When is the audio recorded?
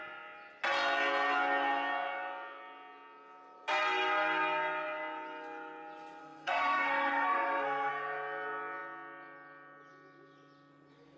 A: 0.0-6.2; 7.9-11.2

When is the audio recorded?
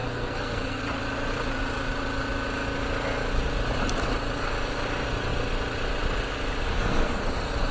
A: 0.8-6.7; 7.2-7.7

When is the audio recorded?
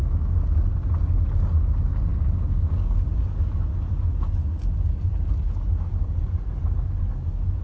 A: 0.0-7.6